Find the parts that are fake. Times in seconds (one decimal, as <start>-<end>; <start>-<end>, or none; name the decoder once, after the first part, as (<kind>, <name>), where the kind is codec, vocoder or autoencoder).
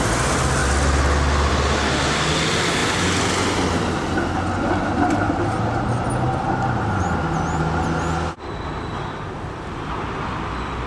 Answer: none